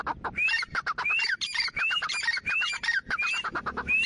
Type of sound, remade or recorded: remade